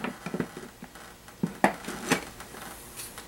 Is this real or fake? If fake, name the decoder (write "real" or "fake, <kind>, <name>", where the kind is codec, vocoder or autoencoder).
real